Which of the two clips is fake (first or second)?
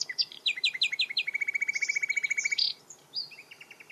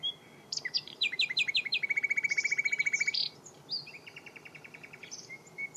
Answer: second